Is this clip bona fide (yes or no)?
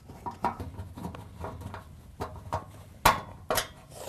yes